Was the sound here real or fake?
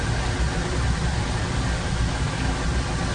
real